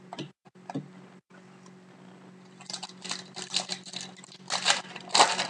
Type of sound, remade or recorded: recorded